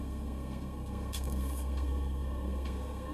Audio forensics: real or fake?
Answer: fake